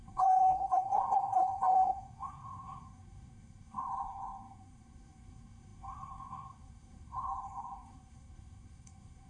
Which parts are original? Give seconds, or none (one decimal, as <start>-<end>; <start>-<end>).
none